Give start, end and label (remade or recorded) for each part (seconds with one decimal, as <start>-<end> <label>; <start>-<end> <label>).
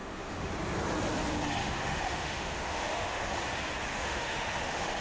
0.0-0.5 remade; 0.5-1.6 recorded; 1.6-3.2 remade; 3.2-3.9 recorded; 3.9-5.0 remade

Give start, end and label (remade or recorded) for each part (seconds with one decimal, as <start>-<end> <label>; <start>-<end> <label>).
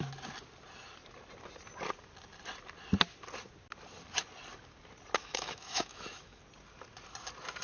0.0-5.2 recorded; 5.2-6.4 remade; 6.4-7.6 recorded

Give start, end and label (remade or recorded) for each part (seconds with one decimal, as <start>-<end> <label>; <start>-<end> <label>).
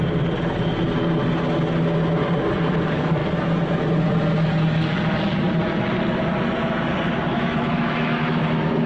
0.0-7.3 recorded; 7.3-8.9 remade